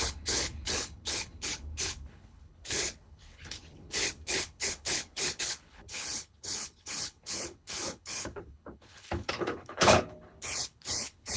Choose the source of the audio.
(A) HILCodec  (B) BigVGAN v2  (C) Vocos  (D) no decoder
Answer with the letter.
A